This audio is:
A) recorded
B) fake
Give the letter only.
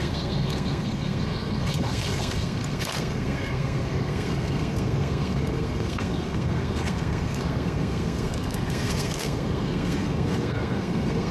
B